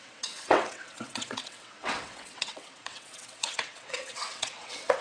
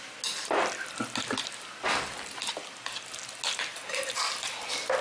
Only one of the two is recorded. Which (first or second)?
second